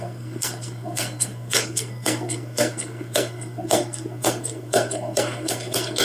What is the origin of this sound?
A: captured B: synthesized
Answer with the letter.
B